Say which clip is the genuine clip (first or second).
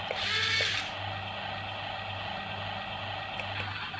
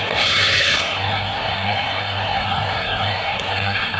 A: first